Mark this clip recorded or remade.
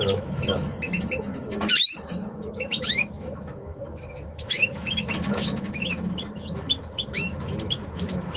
remade